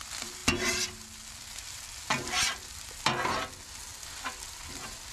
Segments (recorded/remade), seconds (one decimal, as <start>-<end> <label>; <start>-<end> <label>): 0.0-5.1 recorded